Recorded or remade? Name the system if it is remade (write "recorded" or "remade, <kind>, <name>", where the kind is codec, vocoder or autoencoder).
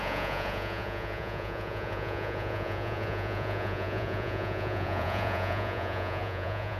remade, vocoder, Vocos